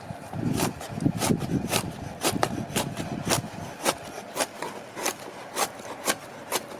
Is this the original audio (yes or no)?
yes